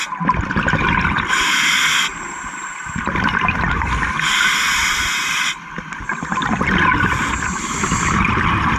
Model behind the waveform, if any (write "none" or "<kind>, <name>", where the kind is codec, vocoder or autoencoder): none